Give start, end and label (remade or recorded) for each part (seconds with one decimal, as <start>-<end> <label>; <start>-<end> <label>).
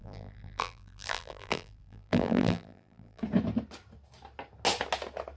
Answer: 0.0-3.2 remade; 3.2-5.4 recorded